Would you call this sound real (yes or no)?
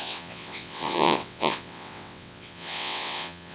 no